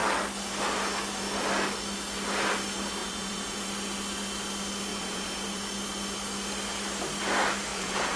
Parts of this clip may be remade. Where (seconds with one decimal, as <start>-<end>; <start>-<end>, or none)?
3.0-3.7; 4.9-5.7; 7.7-8.2

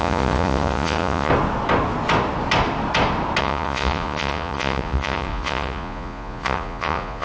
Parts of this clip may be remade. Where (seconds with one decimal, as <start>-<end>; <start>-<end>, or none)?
0.0-1.3; 3.4-7.2

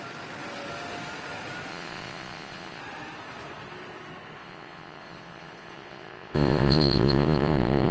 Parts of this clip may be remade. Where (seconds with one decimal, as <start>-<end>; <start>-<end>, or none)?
1.7-2.8; 4.4-7.9

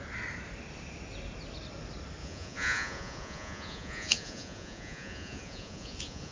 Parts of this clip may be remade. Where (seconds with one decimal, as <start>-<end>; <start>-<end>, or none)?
2.2-6.3

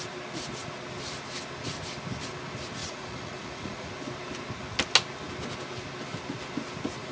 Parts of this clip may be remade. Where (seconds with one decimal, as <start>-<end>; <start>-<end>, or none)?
2.8-3.9